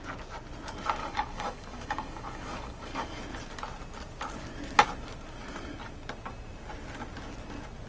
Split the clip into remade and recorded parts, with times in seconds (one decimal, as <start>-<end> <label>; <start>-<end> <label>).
0.0-1.0 recorded; 1.0-3.2 remade; 3.2-7.9 recorded